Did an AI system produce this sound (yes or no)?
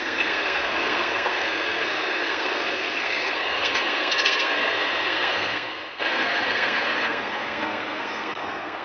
yes